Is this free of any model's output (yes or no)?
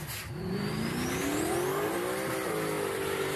yes